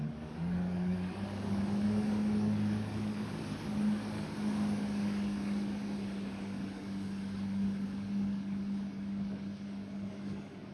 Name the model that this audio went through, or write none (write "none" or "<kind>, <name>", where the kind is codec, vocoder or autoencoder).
codec, DAC